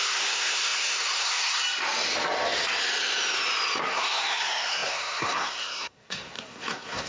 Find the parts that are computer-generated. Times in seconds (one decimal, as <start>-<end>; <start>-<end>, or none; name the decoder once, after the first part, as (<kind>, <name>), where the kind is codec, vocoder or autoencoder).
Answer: 0.0-1.6 (codec, SNAC); 3.8-7.1

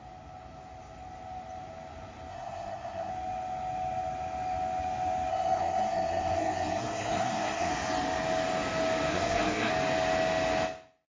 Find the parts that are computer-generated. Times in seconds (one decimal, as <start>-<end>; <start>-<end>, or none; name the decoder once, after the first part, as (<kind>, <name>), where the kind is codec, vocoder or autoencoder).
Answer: 2.3-3.1 (codec, SNAC); 5.3-7.7; 9.1-9.7

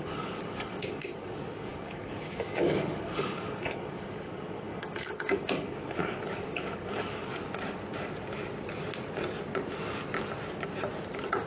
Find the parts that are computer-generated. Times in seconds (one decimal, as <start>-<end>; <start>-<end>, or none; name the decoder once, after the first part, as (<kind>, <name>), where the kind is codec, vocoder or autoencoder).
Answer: 0.0-7.3 (codec, DAC)

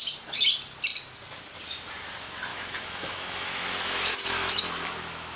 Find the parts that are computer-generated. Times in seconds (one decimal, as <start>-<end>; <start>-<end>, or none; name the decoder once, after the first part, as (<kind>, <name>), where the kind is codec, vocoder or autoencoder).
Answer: 2.5-4.6 (autoencoder, DAC-VAE)

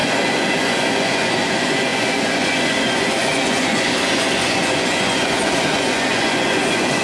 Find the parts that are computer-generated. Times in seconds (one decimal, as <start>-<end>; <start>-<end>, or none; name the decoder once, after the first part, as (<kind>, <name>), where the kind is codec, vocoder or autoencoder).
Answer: 0.0-7.0 (vocoder, Vocos)

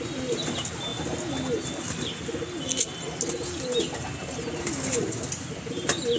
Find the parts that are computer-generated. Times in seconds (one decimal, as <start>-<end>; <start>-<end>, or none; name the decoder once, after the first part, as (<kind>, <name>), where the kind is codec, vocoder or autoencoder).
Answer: none

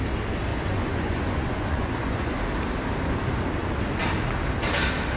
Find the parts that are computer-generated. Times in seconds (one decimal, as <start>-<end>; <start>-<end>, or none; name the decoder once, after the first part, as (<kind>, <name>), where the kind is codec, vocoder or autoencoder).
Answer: 0.5-2.4 (vocoder, Vocos)